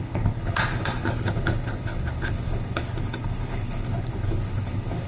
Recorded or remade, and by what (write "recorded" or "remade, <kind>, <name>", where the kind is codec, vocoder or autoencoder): remade, codec, HILCodec